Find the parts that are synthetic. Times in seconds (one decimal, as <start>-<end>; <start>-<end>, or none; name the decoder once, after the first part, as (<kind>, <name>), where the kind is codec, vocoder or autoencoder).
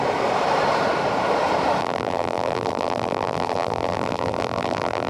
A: 1.8-5.1 (vocoder, BigVGAN v2)